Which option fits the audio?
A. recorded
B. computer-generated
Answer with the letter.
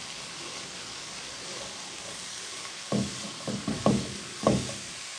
B